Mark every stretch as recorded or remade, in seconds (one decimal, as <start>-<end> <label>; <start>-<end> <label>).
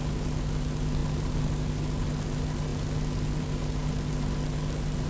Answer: 0.0-5.1 recorded